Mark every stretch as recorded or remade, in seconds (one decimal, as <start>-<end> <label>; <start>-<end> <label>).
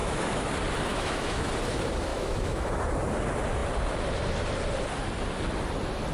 0.0-0.5 remade; 0.5-0.9 recorded; 0.9-1.5 remade; 1.5-2.1 recorded; 2.1-2.7 remade; 2.7-6.1 recorded